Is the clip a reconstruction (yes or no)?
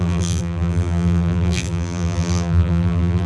yes